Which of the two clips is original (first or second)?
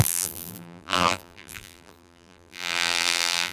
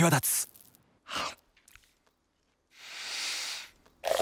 second